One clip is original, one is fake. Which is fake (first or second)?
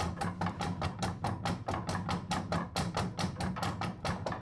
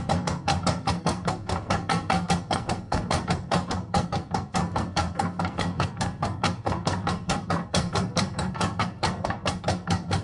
second